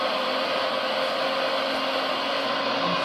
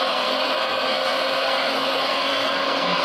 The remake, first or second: second